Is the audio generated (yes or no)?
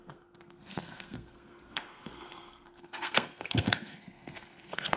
yes